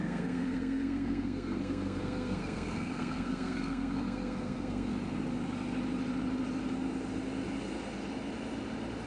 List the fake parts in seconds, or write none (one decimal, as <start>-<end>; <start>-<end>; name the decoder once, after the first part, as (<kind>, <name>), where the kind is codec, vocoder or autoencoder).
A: 0.0-4.9 (codec, SNAC)